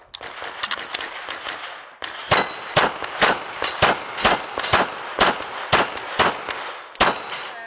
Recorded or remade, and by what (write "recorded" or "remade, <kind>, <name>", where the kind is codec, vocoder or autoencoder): recorded